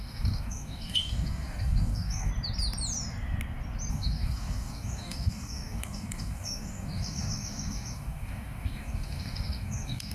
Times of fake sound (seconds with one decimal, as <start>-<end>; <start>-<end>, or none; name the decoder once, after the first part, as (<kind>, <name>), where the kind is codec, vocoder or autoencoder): 0.0-2.3 (codec, DAC); 3.9-10.1